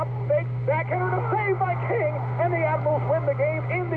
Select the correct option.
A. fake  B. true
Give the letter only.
B